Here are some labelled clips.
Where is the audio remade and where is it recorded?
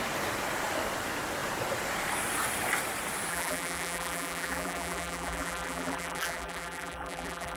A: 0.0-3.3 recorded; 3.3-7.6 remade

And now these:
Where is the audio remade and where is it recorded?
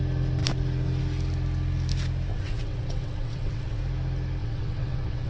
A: 0.0-2.3 recorded; 2.3-3.8 remade; 3.8-4.4 recorded; 4.4-5.3 remade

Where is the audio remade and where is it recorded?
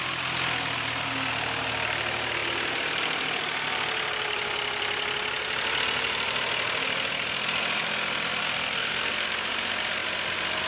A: 0.0-8.4 recorded; 8.4-9.1 remade; 9.1-10.7 recorded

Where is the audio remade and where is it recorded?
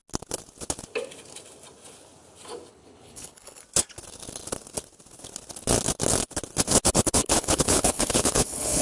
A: 0.0-2.7 recorded; 2.7-3.6 remade; 3.6-6.9 recorded; 6.9-8.8 remade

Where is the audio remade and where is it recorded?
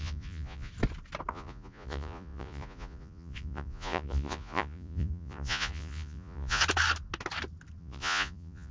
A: 0.0-0.7 remade; 0.7-1.3 recorded; 1.3-6.6 remade; 6.6-7.8 recorded; 7.8-8.7 remade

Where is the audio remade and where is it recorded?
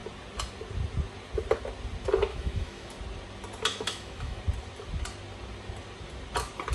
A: 0.0-2.3 recorded; 2.3-2.9 remade; 2.9-3.7 recorded; 3.7-4.4 remade; 4.4-6.7 recorded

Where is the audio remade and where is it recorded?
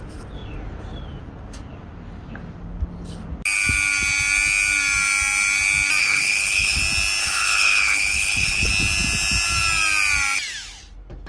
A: 0.0-6.0 recorded; 6.0-6.8 remade; 6.8-7.2 recorded; 7.2-8.7 remade; 8.7-11.3 recorded